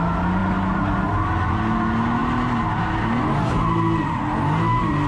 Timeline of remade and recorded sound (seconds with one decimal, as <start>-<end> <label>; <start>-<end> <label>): 0.0-5.1 recorded